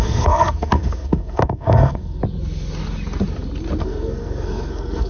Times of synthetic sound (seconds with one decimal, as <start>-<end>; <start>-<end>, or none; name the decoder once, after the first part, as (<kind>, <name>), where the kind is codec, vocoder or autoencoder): 0.0-2.2 (codec, SNAC); 3.8-5.1